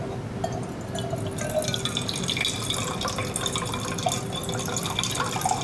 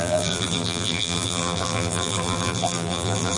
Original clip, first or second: first